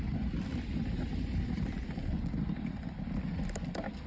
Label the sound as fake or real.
real